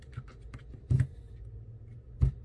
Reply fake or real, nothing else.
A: real